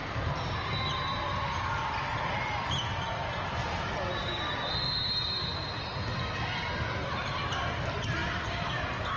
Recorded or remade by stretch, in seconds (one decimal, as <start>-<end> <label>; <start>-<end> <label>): 0.0-9.2 recorded